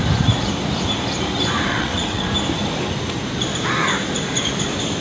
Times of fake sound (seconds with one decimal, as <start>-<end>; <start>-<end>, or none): 1.7-2.3